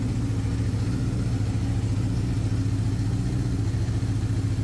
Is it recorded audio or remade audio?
recorded